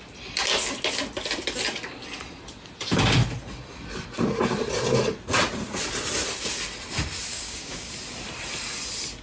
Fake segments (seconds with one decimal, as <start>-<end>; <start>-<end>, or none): 7.3-7.9